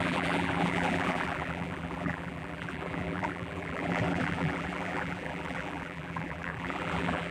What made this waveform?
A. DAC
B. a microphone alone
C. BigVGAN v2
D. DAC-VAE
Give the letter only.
C